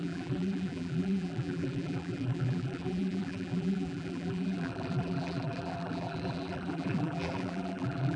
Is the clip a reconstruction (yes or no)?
yes